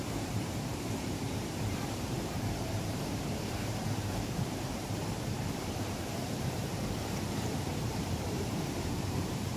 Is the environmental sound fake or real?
fake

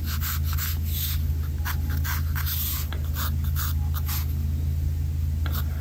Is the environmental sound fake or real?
real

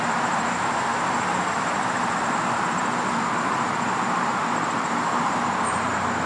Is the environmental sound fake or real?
fake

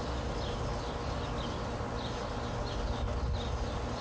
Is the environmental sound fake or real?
real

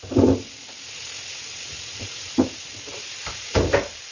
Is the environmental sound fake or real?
fake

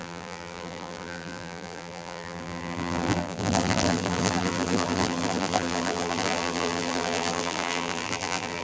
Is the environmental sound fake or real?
fake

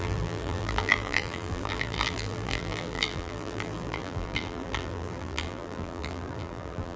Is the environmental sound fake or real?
fake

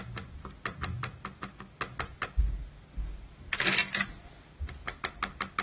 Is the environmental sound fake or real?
real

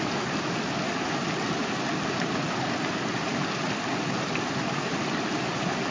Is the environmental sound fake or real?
real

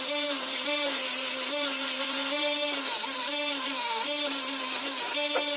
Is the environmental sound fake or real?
fake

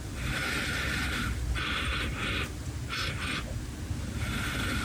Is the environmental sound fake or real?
real